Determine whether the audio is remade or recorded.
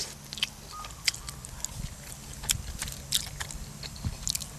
recorded